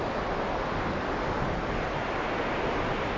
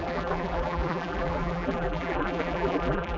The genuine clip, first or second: first